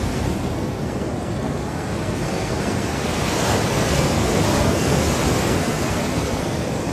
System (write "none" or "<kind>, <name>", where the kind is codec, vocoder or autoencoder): codec, SNAC